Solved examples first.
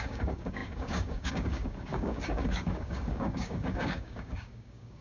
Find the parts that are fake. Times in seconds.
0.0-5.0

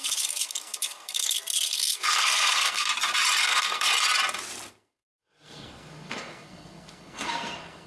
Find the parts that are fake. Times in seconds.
0.0-2.9; 3.4-3.9; 4.7-7.9